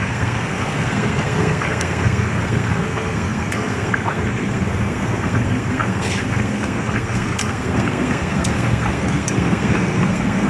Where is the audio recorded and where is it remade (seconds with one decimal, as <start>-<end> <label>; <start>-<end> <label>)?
0.0-10.5 remade